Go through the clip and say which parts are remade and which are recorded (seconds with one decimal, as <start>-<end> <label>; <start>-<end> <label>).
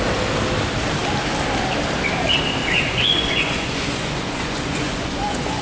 0.0-2.6 recorded; 2.6-5.6 remade